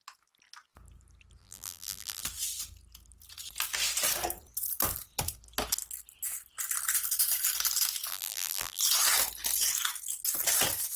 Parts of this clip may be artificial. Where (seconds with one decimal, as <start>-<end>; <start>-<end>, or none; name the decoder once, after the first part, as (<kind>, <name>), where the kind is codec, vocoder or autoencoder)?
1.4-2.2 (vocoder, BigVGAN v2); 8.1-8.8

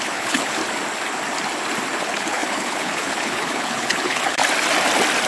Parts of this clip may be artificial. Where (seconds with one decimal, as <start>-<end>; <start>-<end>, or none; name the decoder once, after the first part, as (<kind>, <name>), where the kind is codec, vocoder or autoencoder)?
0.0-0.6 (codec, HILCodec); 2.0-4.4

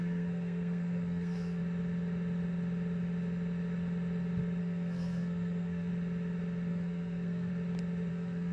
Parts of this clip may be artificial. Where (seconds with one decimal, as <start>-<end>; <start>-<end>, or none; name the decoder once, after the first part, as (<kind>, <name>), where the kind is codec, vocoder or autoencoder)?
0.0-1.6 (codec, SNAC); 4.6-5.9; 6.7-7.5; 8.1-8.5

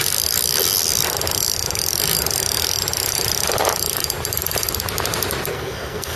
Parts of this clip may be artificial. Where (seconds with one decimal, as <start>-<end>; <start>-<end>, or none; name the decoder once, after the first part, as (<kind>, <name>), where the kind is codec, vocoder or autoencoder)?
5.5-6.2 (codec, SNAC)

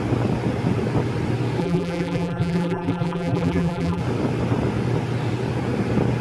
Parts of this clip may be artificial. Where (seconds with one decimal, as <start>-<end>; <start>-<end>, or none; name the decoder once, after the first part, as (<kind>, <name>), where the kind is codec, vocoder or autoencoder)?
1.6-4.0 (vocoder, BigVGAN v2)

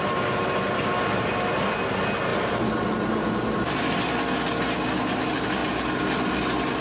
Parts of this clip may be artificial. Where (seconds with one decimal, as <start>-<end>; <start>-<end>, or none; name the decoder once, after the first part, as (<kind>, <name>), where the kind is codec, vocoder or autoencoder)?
none